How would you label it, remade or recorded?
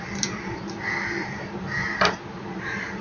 recorded